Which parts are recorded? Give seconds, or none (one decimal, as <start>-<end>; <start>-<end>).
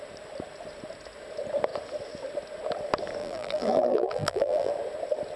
0.0-3.2; 4.7-5.4